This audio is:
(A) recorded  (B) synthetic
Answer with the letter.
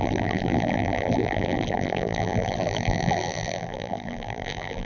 B